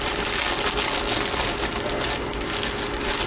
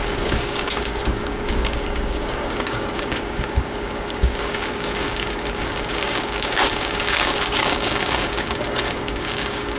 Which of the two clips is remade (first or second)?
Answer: second